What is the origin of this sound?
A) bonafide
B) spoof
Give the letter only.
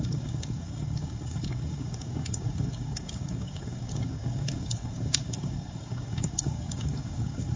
B